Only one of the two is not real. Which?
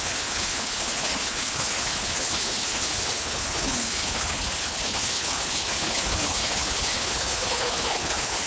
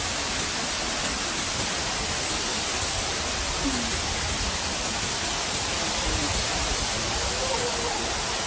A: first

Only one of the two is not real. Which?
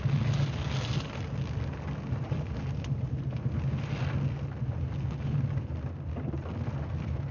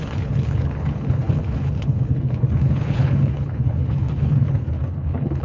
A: second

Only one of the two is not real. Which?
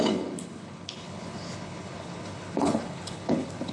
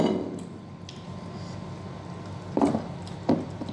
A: first